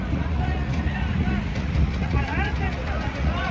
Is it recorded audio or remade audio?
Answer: remade